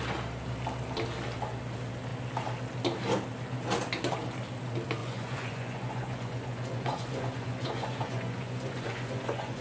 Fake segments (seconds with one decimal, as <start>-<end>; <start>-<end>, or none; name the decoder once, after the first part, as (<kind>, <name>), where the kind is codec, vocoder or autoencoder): 5.0-9.6 (vocoder, Vocos)